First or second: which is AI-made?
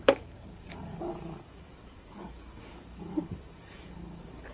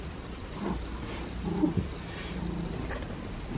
first